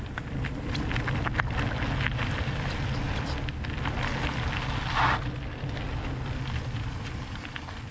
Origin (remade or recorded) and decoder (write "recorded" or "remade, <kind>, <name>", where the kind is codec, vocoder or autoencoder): recorded